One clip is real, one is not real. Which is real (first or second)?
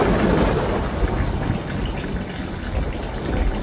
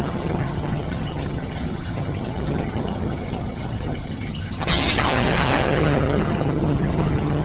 first